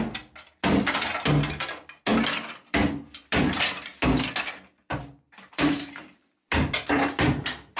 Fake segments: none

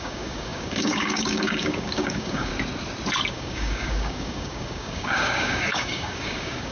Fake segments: 0.0-2.5 (codec, DAC); 3.3-6.7

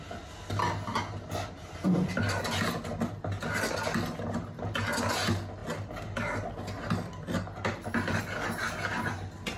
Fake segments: none

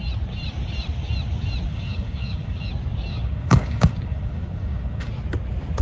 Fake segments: 1.7-2.7 (codec, DAC); 3.1-5.1